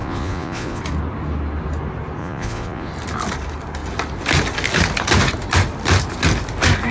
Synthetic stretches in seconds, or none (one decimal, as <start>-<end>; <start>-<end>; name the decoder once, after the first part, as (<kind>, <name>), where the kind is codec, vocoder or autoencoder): 0.0-0.8 (vocoder, Vocos); 2.2-2.9